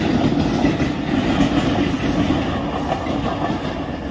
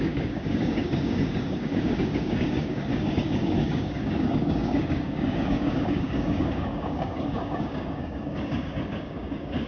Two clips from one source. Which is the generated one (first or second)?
second